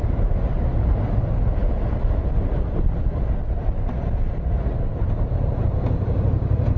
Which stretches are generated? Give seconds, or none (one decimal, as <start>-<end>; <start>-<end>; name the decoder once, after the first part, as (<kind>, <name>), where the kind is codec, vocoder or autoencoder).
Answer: none